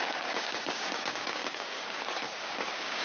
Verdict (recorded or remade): remade